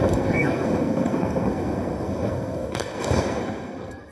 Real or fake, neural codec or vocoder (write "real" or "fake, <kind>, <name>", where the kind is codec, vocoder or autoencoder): fake, codec, SNAC